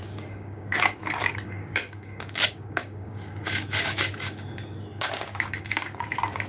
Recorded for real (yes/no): no